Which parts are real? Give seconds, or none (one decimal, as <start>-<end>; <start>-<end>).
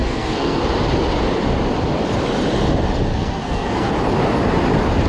0.6-3.1; 3.9-5.1